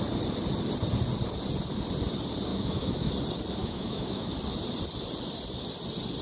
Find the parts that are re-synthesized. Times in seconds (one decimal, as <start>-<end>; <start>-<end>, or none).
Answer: 2.5-3.1; 3.6-4.3